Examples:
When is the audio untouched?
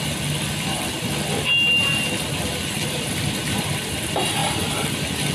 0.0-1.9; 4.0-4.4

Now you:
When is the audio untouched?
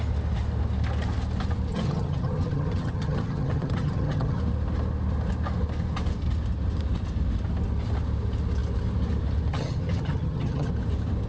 0.0-1.7; 4.4-9.5; 10.7-11.3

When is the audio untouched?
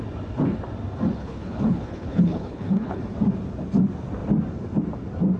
0.0-1.2; 3.0-5.4